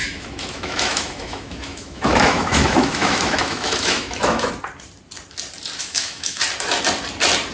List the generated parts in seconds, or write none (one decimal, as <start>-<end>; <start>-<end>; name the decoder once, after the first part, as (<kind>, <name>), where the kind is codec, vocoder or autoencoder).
0.0-4.5 (autoencoder, DAC-VAE); 5.8-6.4